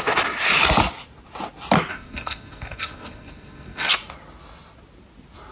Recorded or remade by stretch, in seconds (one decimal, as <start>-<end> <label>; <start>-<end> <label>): 0.0-1.9 recorded; 1.9-3.9 remade; 3.9-5.5 recorded